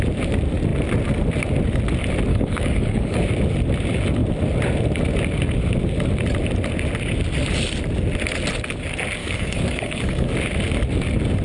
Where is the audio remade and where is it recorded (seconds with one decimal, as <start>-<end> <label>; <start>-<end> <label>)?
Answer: 0.0-2.3 recorded; 2.3-3.2 remade; 3.2-9.2 recorded; 9.2-10.3 remade; 10.3-11.4 recorded